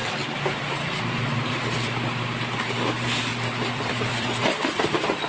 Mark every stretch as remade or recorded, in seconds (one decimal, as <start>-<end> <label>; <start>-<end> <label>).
0.0-1.5 recorded; 1.5-5.3 remade